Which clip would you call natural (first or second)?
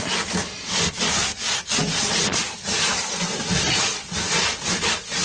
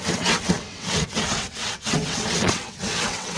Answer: first